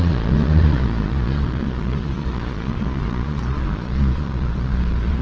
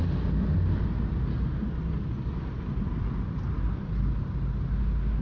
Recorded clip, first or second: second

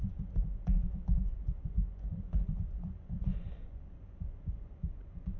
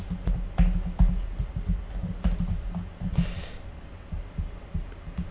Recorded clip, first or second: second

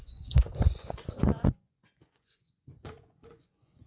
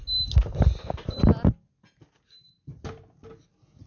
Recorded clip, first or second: second